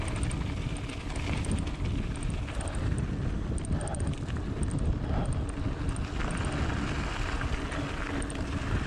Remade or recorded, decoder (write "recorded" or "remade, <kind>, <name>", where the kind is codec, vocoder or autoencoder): recorded